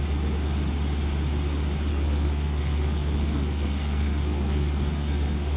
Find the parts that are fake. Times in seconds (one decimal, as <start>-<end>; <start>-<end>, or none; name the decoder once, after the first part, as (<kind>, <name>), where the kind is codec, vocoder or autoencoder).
1.9-5.6 (codec, SNAC)